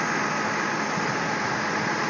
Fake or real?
real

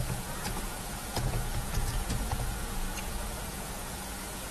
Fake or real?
fake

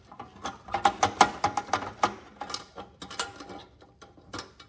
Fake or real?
real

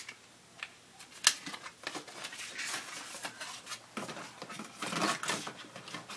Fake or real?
real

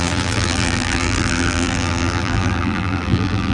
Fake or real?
fake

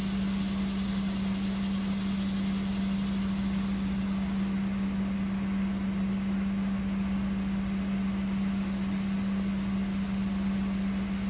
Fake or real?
real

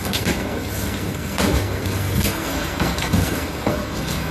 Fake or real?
fake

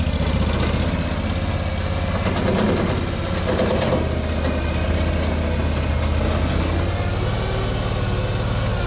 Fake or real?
real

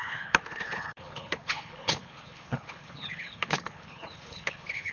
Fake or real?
fake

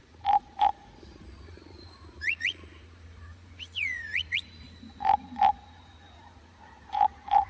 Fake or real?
fake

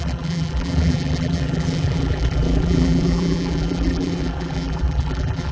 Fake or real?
fake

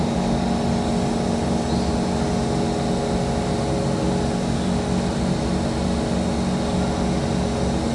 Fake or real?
real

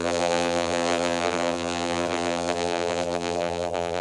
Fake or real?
fake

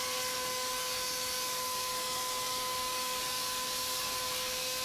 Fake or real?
fake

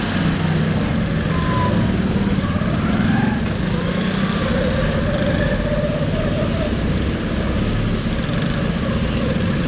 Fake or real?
real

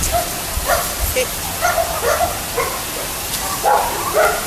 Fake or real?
real